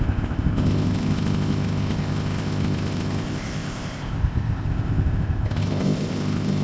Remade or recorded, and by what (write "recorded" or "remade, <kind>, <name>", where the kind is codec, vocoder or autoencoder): remade, codec, ZipCodec